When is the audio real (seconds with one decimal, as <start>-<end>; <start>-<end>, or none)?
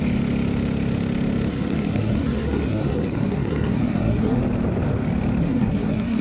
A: 0.0-1.5; 4.4-5.4